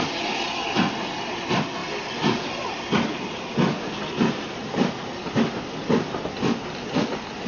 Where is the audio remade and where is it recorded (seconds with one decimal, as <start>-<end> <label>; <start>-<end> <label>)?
0.0-7.5 recorded